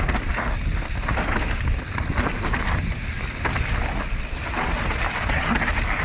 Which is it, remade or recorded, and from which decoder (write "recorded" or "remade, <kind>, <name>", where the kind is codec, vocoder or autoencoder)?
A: recorded